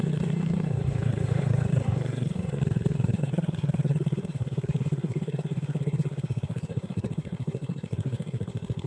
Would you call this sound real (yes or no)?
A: no